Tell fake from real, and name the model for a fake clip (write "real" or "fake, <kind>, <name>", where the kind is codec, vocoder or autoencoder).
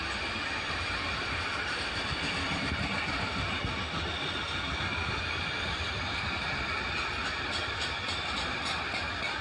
real